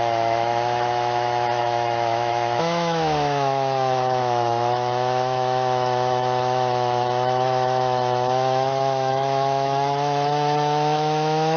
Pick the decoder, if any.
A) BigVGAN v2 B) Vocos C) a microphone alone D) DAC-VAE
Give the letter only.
D